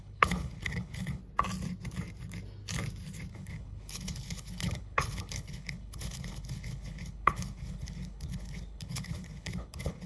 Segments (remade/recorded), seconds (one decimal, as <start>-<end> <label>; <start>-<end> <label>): 0.0-1.2 remade; 1.2-3.3 recorded; 3.3-10.1 remade